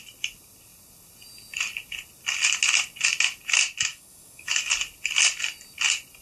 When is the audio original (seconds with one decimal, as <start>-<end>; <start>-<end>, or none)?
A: 0.0-3.9; 4.7-6.2